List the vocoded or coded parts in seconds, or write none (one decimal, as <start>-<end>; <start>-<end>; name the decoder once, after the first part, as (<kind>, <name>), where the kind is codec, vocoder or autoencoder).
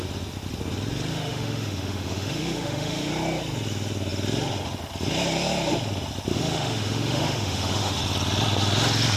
1.1-3.1 (autoencoder, DAC-VAE); 6.3-8.0